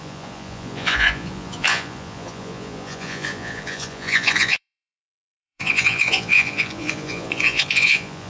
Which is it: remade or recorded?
remade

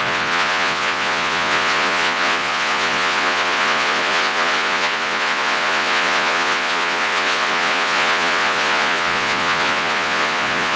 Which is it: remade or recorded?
remade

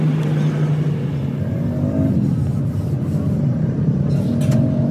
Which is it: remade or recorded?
recorded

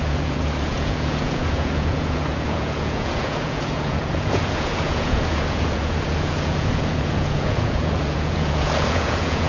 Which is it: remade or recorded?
remade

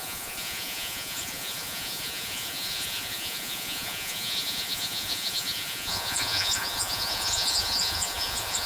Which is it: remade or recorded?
remade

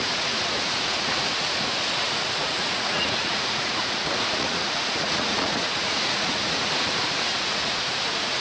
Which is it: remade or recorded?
remade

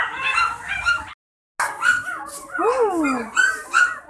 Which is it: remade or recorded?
recorded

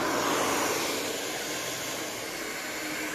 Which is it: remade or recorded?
recorded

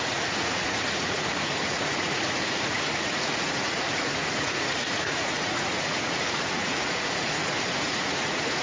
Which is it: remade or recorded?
remade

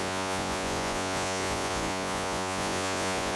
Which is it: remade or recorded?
remade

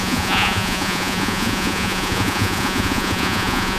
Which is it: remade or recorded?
remade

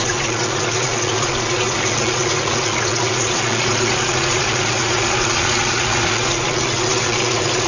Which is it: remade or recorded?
remade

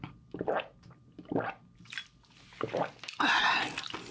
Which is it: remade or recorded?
recorded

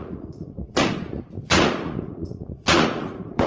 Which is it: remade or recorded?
remade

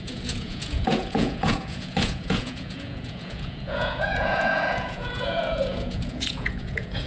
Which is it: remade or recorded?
remade